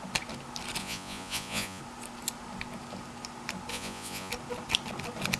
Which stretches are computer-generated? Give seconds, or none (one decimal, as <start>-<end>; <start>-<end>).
0.8-1.8; 3.7-4.3